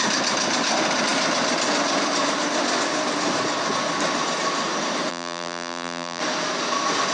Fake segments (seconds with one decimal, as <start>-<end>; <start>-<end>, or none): 5.1-6.2